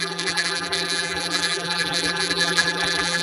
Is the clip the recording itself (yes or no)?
no